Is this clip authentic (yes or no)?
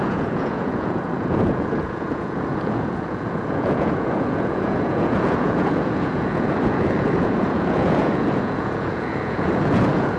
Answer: no